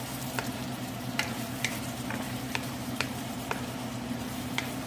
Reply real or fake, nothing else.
fake